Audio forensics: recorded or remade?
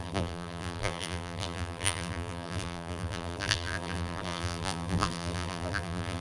remade